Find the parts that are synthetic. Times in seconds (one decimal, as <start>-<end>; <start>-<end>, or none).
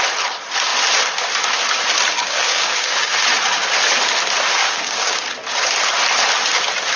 2.2-3.1; 4.6-5.2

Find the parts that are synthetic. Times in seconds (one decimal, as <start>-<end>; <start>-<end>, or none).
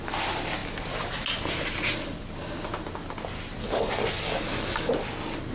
3.6-4.9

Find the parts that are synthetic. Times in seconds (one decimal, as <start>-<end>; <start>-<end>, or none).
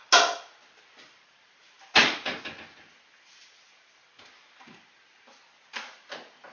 2.0-2.5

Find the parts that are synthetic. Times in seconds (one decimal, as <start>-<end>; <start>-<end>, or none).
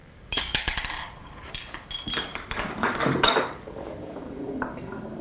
0.0-1.5; 2.3-4.1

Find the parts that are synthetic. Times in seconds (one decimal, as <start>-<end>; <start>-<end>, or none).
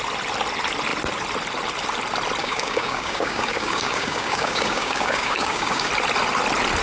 2.4-5.9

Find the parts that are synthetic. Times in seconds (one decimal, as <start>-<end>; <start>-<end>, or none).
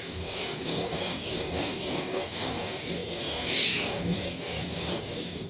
0.0-5.5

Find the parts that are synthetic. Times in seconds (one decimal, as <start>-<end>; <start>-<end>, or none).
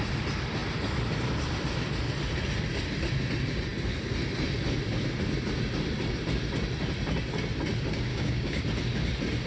8.1-8.6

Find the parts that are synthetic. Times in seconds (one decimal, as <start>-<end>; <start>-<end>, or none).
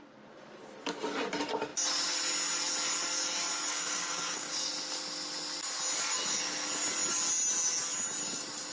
3.7-4.7